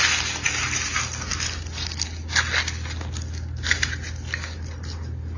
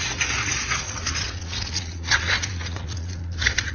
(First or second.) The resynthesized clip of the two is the second